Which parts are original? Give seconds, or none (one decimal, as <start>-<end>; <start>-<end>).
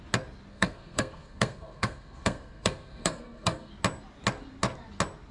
0.0-0.5; 3.7-5.3